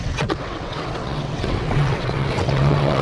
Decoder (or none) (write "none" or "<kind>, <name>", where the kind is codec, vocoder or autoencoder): vocoder, WaveNeXt